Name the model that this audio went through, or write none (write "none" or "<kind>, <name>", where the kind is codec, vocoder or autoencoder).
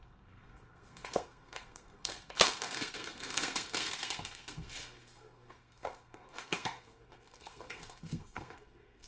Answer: codec, SNAC